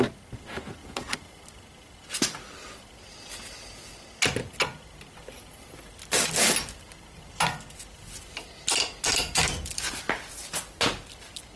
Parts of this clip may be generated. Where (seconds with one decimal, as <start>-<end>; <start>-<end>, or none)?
0.8-1.3